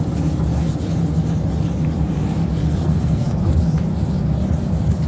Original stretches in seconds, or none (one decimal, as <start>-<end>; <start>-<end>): 0.0-2.6; 3.4-5.1